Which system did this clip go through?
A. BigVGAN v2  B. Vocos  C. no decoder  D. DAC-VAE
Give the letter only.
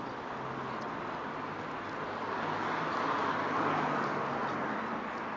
C